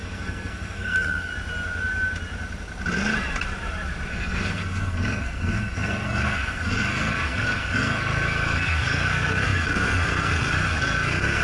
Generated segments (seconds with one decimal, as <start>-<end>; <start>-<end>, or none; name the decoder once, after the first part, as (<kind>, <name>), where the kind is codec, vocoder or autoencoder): 0.0-1.3 (codec, SNAC); 4.1-11.4